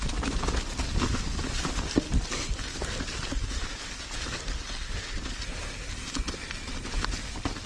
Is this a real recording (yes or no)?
yes